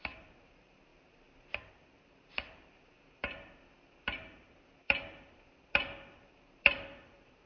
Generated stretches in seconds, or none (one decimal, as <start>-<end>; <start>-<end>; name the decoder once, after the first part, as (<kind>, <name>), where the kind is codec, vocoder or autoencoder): 0.0-0.9 (vocoder, BigVGAN v2); 1.7-7.5